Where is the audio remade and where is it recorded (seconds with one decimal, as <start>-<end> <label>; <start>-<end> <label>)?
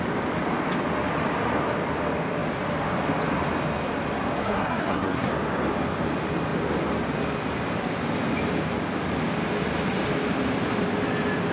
0.0-4.4 recorded; 4.4-5.3 remade; 5.3-11.5 recorded